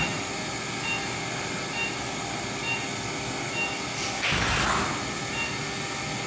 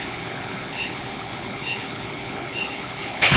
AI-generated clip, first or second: second